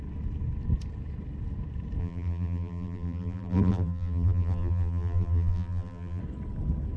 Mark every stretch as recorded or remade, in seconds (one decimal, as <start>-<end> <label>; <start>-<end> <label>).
0.0-2.0 recorded; 2.0-6.2 remade; 6.2-7.0 recorded